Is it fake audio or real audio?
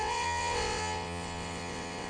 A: fake